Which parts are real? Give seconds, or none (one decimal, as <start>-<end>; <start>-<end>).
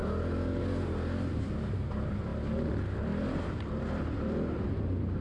0.0-1.3; 2.3-4.7